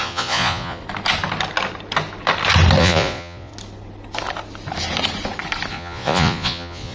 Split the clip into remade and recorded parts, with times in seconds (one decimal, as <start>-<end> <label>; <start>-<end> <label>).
0.0-0.8 remade; 0.8-2.8 recorded; 2.8-3.5 remade; 3.5-5.7 recorded; 5.7-6.9 remade